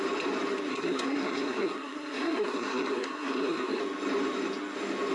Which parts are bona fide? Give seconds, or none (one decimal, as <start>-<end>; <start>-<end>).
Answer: 0.0-0.7; 3.8-5.1